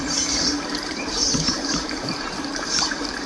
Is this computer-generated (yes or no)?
yes